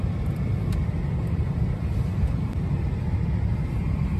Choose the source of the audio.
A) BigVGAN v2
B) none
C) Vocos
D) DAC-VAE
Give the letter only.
B